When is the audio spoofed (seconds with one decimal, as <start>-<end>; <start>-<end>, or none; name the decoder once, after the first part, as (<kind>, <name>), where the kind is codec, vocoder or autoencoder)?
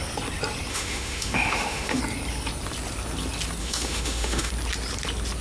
0.7-2.0 (autoencoder, DAC-VAE); 3.6-4.5